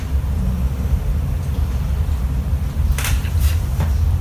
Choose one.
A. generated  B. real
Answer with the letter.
A